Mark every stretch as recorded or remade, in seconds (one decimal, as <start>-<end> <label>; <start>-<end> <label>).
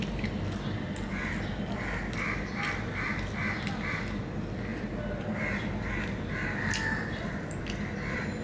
0.0-8.4 recorded